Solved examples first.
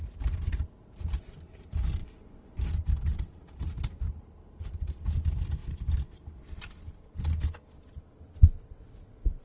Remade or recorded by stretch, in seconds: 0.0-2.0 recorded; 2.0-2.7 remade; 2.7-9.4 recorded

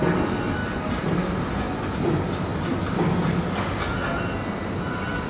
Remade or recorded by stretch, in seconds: 0.0-5.3 recorded

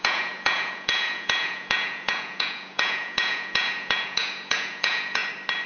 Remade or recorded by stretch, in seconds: 0.0-5.2 remade; 5.2-5.7 recorded

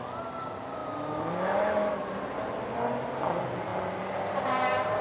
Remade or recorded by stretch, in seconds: 0.0-5.0 recorded

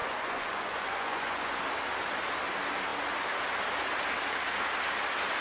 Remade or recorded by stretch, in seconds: 0.0-1.6 remade; 1.6-5.4 recorded

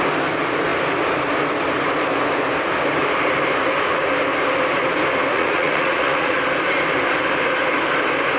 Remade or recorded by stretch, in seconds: 0.0-5.3 recorded; 5.3-6.4 remade; 6.4-8.4 recorded

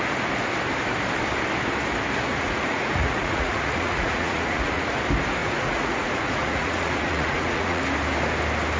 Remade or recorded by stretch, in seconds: 0.0-2.3 recorded; 2.3-4.9 remade; 4.9-5.4 recorded; 5.4-7.8 remade; 7.8-8.8 recorded